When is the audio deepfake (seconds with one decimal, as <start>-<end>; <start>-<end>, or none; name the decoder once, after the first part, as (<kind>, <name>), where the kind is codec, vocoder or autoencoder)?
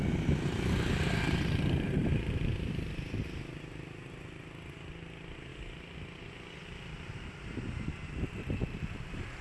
none